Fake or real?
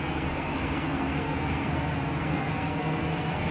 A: fake